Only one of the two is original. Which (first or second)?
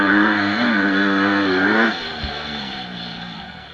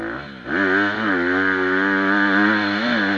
second